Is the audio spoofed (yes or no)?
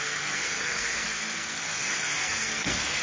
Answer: yes